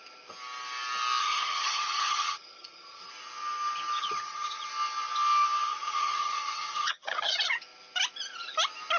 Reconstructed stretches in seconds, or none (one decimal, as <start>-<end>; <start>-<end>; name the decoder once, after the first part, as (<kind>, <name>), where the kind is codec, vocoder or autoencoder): 1.2-3.1 (vocoder, HiFi-GAN); 4.0-4.7; 5.7-7.5